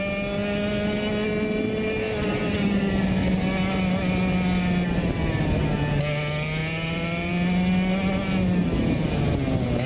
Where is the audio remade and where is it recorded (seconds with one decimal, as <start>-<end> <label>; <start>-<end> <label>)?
0.0-9.9 recorded